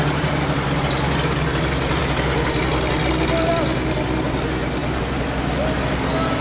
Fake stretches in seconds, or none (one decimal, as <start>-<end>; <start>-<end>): none

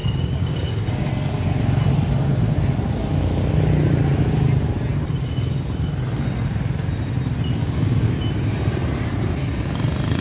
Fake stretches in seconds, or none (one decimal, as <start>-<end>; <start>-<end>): 0.0-1.1; 7.6-8.1

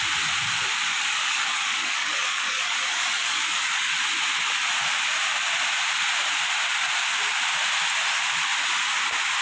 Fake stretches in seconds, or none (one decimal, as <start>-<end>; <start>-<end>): 0.9-3.9

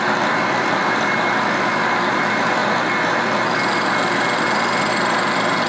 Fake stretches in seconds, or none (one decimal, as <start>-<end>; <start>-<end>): none

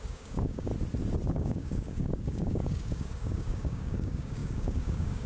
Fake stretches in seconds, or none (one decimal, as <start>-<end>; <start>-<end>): 0.0-0.7; 1.3-5.3

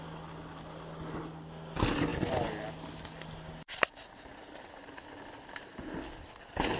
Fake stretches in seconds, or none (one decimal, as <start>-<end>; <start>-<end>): none